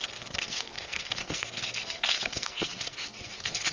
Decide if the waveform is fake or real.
fake